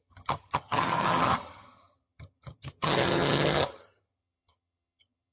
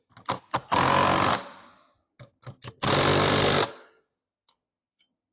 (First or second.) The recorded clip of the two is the second